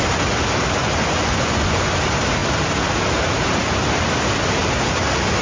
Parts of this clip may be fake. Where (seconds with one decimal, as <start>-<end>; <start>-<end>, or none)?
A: 0.8-1.9